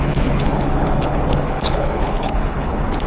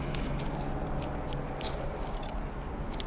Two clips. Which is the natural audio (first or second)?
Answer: second